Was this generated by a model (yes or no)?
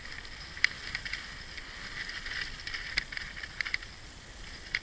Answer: no